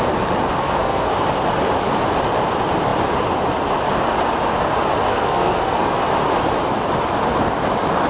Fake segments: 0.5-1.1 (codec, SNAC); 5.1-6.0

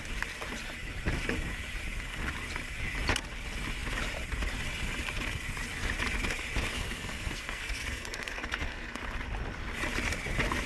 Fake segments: 6.7-9.0 (codec, SNAC)

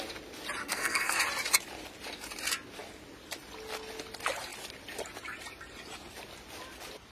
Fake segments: 0.6-1.2 (codec, SNAC)

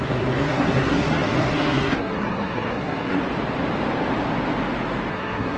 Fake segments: 0.0-3.2 (codec, SNAC); 5.1-5.6

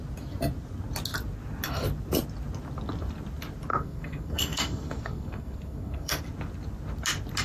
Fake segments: 3.7-6.2 (codec, SNAC)

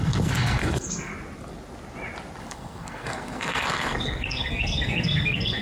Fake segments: 0.0-1.1 (codec, SNAC); 2.4-5.6